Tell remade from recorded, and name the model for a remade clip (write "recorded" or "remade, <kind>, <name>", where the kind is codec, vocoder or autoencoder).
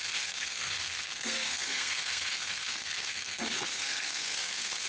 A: remade, codec, SNAC